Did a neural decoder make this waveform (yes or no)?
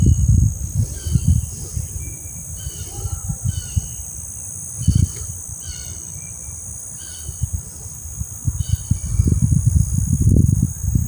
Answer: no